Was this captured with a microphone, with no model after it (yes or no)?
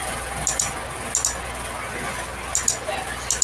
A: yes